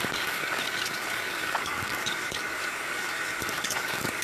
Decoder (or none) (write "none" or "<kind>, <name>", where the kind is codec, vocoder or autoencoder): codec, DAC